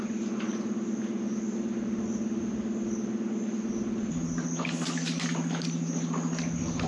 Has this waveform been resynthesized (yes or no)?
no